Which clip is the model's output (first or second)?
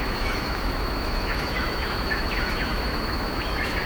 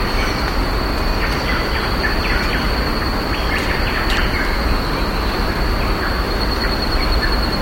first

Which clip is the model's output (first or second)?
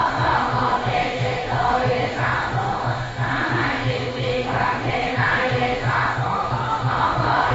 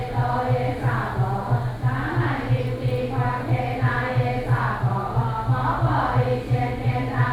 first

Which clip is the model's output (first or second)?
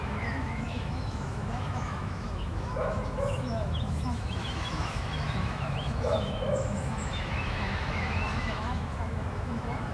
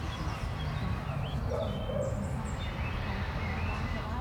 first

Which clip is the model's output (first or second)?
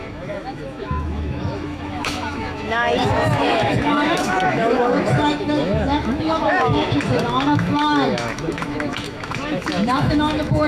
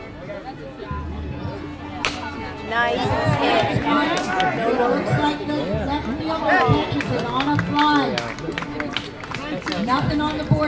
first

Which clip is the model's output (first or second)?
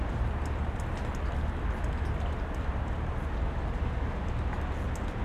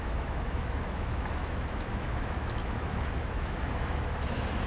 second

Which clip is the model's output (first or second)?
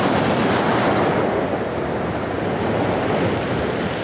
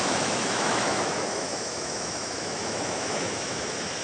second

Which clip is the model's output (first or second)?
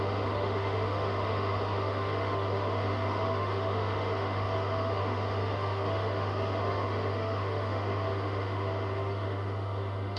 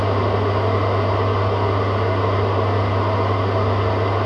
first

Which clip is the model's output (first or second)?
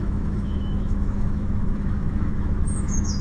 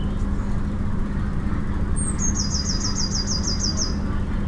first